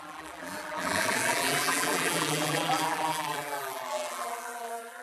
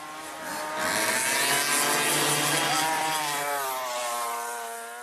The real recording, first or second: second